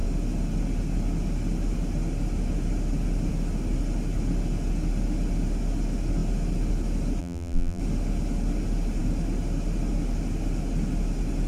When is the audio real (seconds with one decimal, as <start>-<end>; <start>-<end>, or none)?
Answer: 0.0-7.2; 7.8-11.5